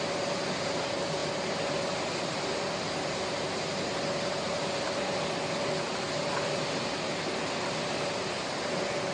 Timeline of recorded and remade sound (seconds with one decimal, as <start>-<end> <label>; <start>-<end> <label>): 0.0-9.1 recorded